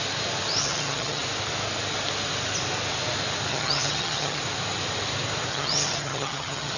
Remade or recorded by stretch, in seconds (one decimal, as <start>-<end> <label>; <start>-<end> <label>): 0.0-0.6 recorded; 0.6-1.2 remade; 1.2-3.5 recorded; 3.5-4.4 remade; 4.4-5.5 recorded; 5.5-6.8 remade